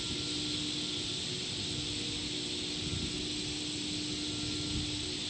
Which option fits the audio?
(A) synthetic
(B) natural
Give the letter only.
B